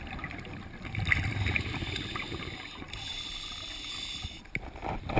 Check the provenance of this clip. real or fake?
real